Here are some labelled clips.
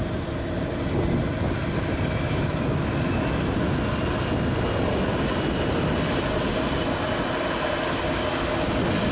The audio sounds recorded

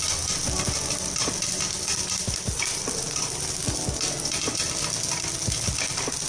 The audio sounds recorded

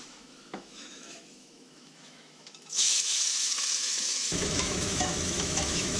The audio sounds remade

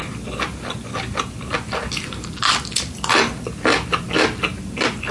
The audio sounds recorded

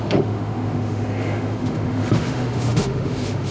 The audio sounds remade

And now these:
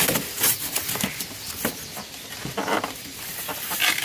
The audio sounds recorded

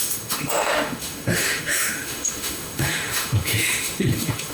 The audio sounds remade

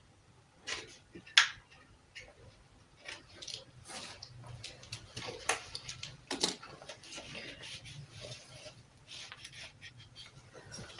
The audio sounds recorded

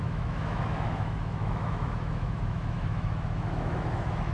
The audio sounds remade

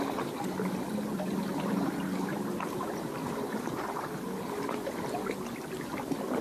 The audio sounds recorded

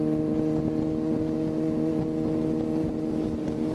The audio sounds recorded